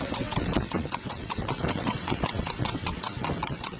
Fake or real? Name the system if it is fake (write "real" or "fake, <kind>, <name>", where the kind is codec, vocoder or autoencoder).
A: fake, vocoder, WaveNeXt